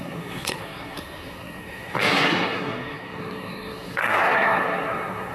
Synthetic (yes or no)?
yes